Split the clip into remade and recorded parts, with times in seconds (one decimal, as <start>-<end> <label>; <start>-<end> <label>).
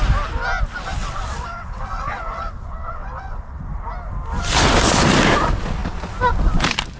0.0-1.0 recorded; 1.0-3.6 remade; 3.6-7.0 recorded